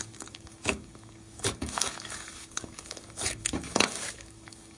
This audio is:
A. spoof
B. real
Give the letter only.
A